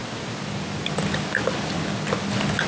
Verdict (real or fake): real